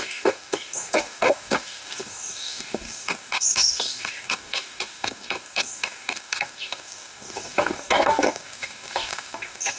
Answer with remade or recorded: remade